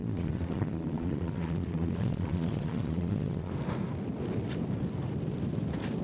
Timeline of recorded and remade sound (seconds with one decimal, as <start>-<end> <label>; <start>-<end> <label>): 0.0-3.5 remade; 3.5-6.0 recorded